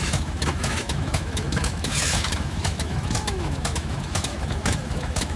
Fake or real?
fake